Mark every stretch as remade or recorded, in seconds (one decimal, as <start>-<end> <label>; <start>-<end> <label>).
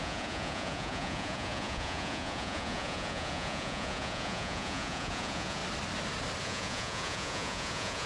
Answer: 0.0-5.6 remade; 5.6-6.4 recorded; 6.4-8.1 remade